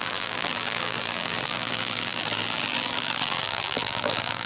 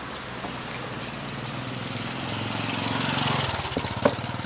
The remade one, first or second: first